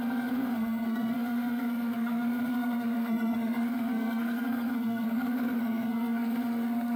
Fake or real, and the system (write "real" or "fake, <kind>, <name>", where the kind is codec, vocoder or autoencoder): fake, codec, SNAC